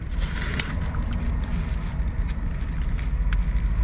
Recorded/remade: recorded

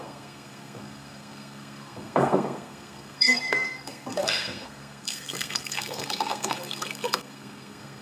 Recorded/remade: remade